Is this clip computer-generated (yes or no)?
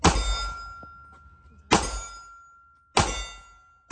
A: no